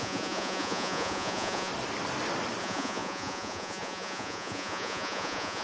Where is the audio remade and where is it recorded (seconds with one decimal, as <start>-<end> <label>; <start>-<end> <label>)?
0.0-1.7 remade; 1.7-2.6 recorded; 2.6-5.6 remade